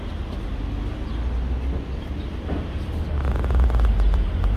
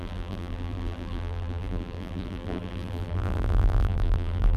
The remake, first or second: second